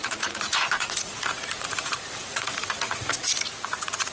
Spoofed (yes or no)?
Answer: yes